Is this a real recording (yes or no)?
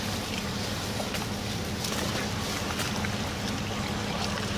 yes